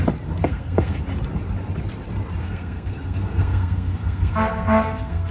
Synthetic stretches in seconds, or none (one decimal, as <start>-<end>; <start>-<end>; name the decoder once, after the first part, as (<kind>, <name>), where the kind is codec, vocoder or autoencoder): 0.4-1.0 (codec, SNAC); 2.4-5.3